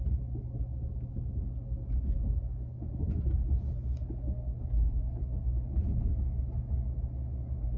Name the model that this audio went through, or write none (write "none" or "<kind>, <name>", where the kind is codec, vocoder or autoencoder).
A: none